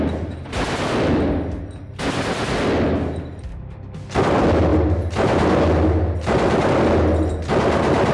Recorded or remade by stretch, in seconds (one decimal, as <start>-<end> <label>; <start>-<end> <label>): 0.0-4.7 recorded; 4.7-5.5 remade; 5.5-8.1 recorded